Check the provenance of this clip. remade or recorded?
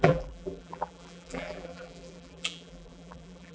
remade